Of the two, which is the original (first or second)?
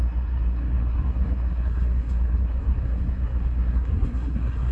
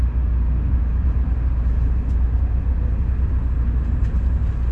second